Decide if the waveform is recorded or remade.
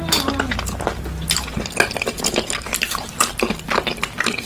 recorded